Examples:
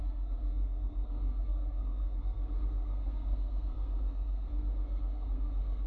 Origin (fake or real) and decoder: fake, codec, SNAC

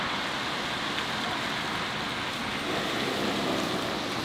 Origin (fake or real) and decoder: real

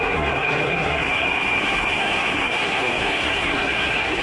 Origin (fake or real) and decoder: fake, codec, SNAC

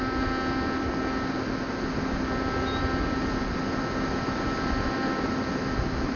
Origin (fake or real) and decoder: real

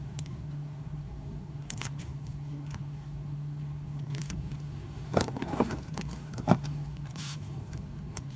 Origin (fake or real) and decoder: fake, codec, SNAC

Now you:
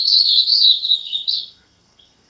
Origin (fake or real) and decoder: fake, codec, SNAC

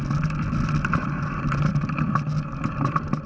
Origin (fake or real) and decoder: real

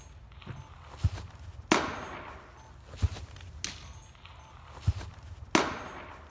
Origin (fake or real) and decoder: real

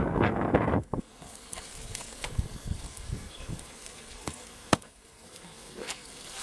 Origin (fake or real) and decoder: fake, codec, SNAC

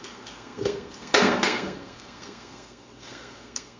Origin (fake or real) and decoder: fake, codec, SNAC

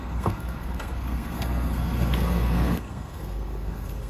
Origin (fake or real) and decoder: fake, codec, SNAC